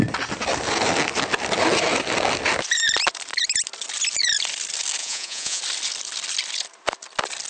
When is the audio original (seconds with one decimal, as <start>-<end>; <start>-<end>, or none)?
0.0-5.0; 5.6-7.5